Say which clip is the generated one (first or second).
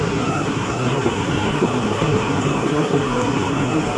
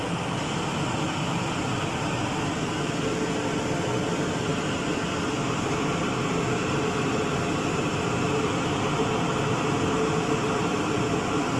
first